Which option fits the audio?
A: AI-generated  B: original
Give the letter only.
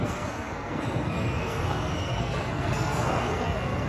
A